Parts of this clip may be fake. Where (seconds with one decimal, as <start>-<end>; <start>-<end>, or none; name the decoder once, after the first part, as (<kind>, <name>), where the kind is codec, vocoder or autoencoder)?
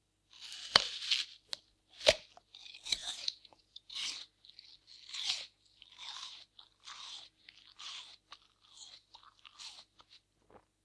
3.0-3.9 (vocoder, Vocos)